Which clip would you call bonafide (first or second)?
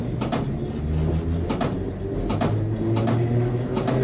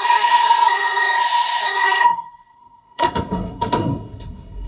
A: first